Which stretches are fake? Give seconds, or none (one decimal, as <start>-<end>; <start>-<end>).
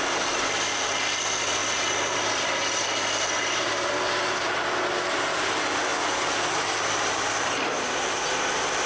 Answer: 1.6-4.2; 5.9-7.5